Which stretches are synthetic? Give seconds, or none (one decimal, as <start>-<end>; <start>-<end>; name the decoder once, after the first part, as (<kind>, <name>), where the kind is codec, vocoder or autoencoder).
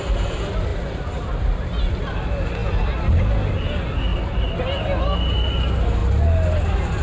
0.7-2.1 (vocoder, BigVGAN v2)